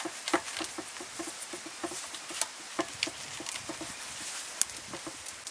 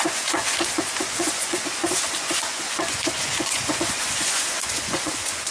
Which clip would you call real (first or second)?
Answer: first